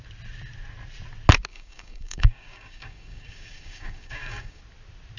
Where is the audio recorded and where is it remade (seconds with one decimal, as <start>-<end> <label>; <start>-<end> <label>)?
0.0-1.5 recorded; 1.5-4.6 remade; 4.6-5.2 recorded